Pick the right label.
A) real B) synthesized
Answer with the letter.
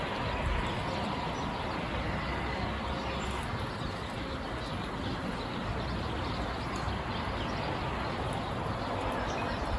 A